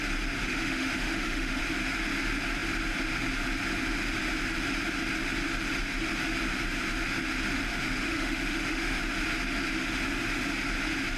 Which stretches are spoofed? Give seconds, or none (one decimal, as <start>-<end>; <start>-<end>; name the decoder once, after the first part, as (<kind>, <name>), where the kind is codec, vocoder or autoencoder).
0.4-1.6 (autoencoder, DAC-VAE); 7.7-9.0